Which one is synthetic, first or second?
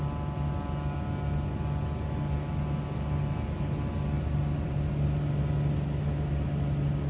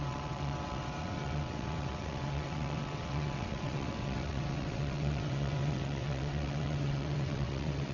second